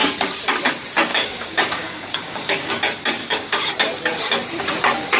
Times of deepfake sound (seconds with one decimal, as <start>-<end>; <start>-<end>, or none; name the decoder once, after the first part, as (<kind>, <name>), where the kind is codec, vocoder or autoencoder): 1.1-2.7 (codec, DAC); 3.2-3.7

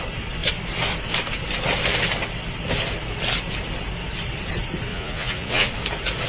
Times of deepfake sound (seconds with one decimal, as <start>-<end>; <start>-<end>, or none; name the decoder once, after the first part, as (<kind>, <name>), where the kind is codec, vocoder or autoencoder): 4.9-5.7 (vocoder, Vocos)

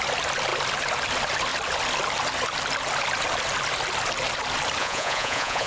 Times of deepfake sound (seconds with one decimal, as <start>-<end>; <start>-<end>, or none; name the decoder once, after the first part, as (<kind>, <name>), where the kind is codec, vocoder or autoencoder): 4.8-5.7 (vocoder, Vocos)

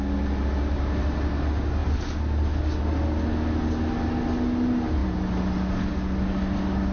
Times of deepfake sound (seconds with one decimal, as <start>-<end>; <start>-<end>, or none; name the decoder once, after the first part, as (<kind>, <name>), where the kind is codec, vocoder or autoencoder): none